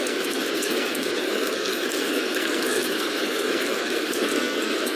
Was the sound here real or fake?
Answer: fake